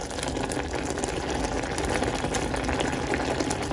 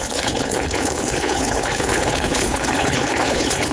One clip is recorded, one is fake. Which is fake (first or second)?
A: second